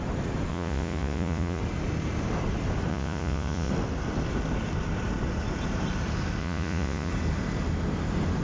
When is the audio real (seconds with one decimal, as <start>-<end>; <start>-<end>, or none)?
0.0-0.5; 1.6-2.9; 3.7-6.4; 7.1-8.4